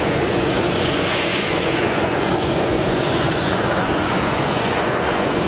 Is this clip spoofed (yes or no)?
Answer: yes